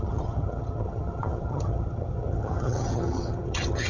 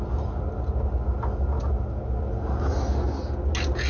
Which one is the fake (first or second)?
first